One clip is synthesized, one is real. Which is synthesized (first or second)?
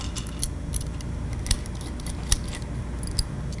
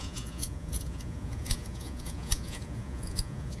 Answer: second